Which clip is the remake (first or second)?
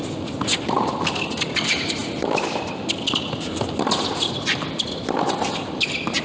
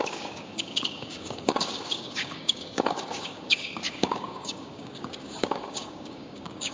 second